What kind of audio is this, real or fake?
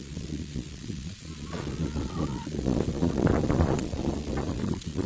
fake